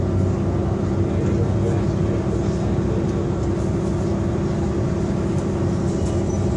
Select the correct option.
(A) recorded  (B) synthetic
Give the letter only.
A